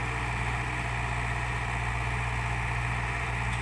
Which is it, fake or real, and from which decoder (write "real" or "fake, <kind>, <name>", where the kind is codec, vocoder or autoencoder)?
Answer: real